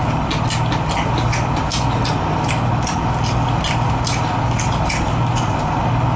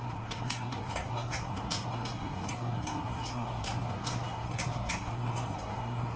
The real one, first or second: first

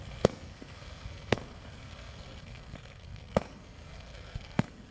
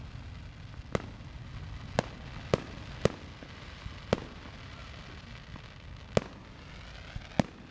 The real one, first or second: second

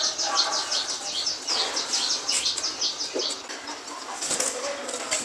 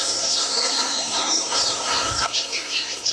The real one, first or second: first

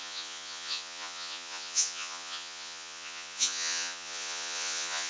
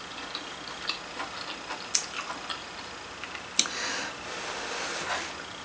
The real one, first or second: second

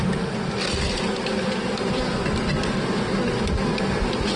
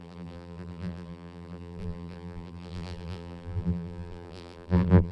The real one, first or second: first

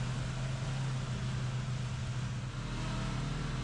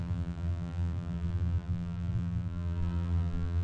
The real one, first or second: first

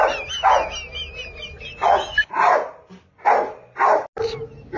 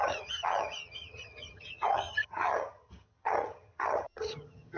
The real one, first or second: first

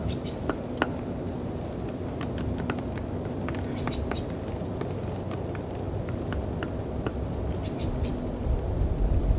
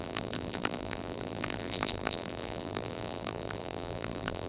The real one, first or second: first